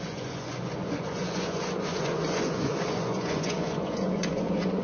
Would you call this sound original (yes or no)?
no